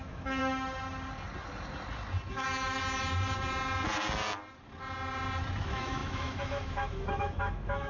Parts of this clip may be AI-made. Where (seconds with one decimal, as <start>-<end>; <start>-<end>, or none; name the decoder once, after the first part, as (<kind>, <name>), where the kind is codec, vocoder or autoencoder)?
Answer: 0.0-0.4 (autoencoder, DAC-VAE); 2.3-2.8; 5.6-7.9